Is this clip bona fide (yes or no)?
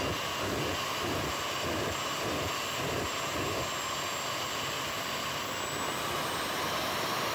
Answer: yes